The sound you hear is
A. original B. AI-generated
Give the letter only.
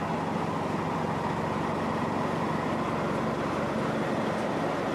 A